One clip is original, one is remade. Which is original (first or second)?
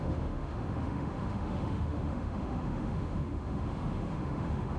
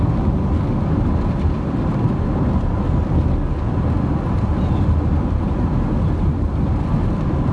second